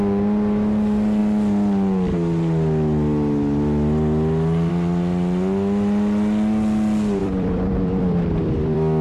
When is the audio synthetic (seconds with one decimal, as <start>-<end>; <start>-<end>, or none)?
7.2-9.0